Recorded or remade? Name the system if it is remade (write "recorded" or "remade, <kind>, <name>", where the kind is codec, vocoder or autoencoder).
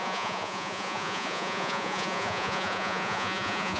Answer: remade, vocoder, Vocos